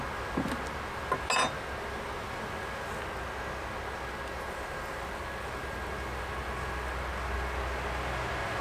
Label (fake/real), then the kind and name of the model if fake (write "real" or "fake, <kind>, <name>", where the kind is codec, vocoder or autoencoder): real